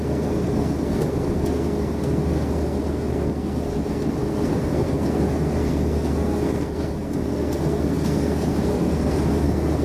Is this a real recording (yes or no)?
no